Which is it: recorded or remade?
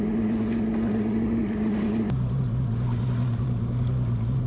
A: recorded